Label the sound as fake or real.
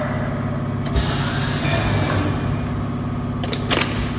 real